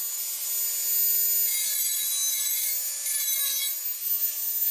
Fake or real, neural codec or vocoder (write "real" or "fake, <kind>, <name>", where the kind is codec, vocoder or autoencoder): real